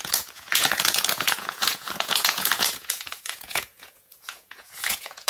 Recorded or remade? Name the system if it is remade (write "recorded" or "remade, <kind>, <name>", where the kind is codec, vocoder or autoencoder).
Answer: remade, vocoder, Vocos